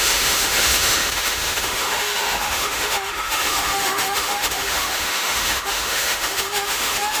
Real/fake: fake